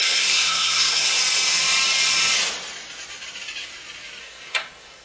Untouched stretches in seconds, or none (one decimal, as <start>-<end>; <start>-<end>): 1.2-4.2